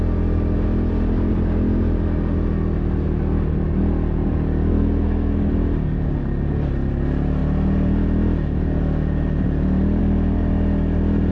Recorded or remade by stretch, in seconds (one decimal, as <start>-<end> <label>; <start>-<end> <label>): 0.0-4.7 recorded; 4.7-5.5 remade; 5.5-11.3 recorded